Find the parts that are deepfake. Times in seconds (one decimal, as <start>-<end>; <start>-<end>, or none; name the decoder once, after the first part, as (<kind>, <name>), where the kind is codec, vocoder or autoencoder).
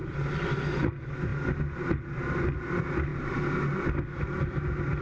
0.0-0.6 (vocoder, BigVGAN v2)